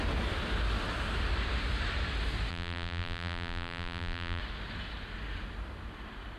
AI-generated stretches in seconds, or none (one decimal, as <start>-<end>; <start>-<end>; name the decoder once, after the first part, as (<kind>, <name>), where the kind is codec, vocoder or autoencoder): 2.5-4.4 (vocoder, BigVGAN v2)